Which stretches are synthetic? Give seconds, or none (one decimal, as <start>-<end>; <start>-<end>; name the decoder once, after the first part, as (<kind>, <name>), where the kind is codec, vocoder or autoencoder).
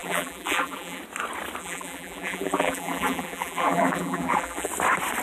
0.0-1.0 (vocoder, BigVGAN v2); 1.6-4.7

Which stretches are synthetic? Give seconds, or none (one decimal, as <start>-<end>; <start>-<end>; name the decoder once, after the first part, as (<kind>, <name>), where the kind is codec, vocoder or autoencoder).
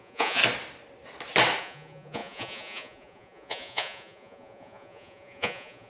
0.0-0.4 (vocoder, Vocos); 1.6-5.9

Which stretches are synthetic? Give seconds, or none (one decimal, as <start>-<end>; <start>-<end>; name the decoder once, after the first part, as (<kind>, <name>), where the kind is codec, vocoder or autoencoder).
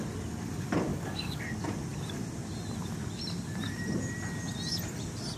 0.9-1.4 (codec, DAC)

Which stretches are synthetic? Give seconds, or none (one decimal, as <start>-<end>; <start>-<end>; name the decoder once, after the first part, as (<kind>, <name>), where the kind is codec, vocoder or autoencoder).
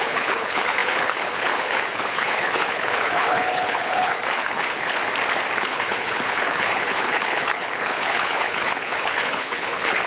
0.0-5.0 (codec, HILCodec); 5.6-10.1